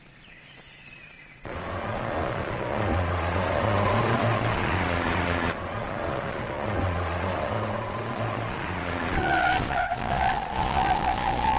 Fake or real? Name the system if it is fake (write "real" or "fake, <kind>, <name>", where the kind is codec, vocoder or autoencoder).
fake, vocoder, Vocos